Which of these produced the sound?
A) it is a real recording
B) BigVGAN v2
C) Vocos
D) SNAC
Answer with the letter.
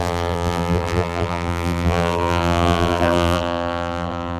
B